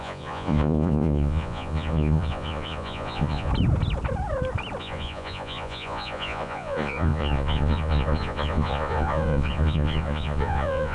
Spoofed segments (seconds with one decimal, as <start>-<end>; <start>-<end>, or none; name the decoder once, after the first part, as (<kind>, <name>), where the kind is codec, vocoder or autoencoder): 0.0-3.5 (vocoder, Vocos); 4.8-10.9